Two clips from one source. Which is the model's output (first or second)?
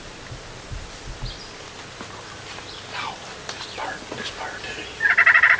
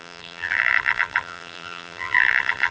second